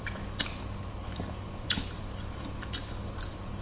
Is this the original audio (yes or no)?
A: no